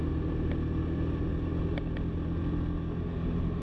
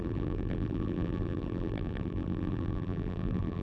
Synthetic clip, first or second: second